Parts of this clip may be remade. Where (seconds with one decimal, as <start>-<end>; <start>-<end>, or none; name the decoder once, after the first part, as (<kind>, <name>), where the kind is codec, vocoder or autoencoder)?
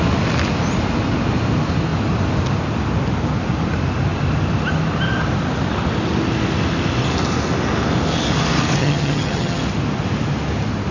8.8-9.6 (vocoder, HiFi-GAN)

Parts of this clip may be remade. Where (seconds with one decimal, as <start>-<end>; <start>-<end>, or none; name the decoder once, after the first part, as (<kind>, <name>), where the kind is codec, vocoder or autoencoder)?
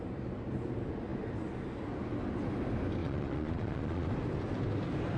3.0-4.1 (vocoder, Vocos)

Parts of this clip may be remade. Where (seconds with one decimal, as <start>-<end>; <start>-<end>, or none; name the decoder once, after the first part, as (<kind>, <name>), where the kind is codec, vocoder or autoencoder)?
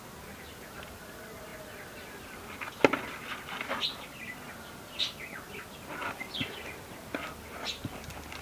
none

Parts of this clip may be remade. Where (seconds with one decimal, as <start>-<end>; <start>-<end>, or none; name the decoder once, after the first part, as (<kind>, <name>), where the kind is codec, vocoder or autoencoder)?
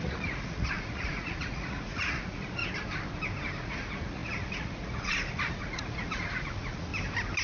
0.0-2.6 (vocoder, Vocos); 3.6-6.9